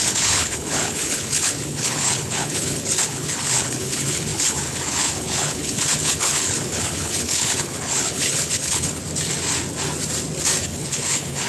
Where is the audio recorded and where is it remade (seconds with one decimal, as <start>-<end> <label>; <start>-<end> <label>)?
0.0-9.0 remade; 9.0-10.6 recorded; 10.6-11.5 remade